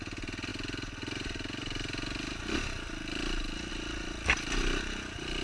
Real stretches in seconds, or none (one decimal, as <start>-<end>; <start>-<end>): 0.0-5.4